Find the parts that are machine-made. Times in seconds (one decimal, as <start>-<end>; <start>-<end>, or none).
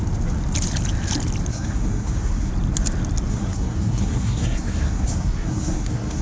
1.5-2.5; 3.3-6.2